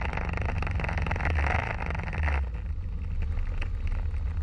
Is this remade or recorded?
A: recorded